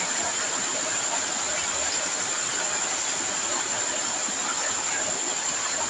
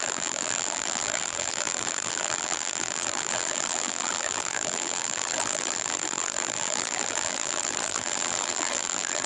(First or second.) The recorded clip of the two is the first